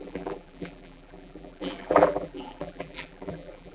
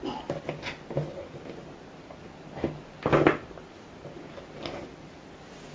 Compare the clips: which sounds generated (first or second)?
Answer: first